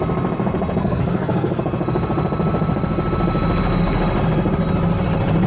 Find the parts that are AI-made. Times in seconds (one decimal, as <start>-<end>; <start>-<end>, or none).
0.8-1.6